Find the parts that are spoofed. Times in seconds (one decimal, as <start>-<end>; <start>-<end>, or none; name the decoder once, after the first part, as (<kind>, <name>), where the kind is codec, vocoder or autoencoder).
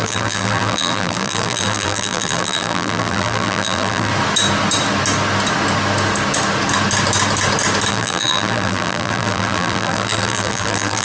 0.0-4.1 (vocoder, BigVGAN v2); 7.9-11.0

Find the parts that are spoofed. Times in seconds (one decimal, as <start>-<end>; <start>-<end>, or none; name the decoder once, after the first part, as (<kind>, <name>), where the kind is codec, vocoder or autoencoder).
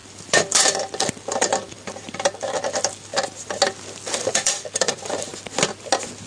0.0-3.1 (vocoder, BigVGAN v2); 3.7-5.3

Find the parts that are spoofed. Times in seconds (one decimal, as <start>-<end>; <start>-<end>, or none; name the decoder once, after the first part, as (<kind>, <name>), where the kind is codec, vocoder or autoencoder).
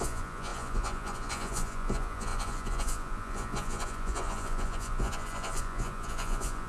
0.0-6.7 (vocoder, Vocos)